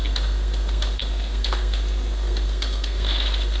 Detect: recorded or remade remade